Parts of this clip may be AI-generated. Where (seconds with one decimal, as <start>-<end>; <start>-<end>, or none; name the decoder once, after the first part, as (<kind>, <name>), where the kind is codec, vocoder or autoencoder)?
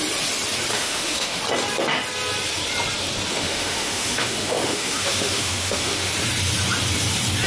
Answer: 0.7-1.4 (autoencoder, DAC-VAE); 3.3-6.1